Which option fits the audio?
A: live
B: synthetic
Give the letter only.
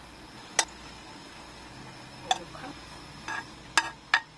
A